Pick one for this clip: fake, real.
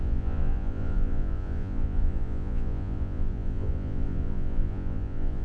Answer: fake